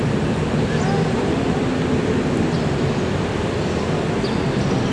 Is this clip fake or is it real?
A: real